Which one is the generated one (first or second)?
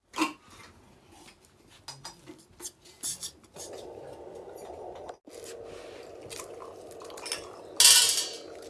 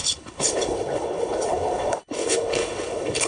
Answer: second